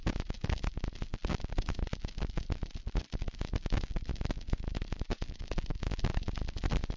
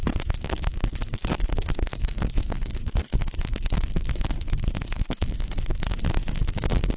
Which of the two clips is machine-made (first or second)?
second